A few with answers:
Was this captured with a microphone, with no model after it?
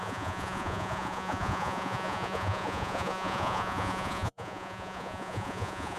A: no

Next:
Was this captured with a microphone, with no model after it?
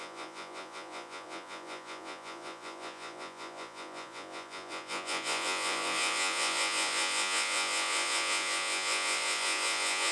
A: no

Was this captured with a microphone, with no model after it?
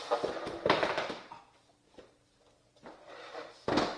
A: yes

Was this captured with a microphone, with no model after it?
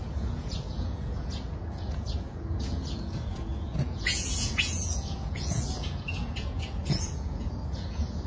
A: no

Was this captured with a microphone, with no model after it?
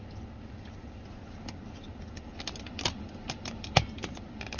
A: yes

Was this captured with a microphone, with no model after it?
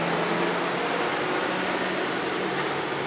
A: yes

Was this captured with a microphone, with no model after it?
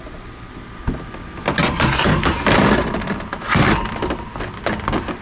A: yes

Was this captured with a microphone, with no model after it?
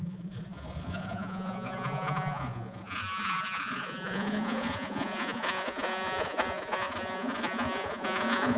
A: no